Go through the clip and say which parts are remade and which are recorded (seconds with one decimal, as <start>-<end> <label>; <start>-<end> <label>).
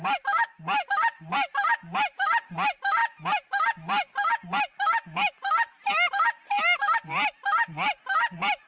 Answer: 0.0-8.7 recorded